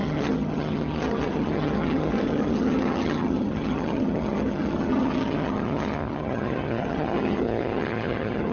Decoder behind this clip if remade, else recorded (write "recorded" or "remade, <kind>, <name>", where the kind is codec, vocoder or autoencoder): remade, vocoder, HiFi-GAN